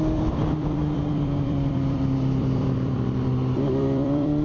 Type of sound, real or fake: fake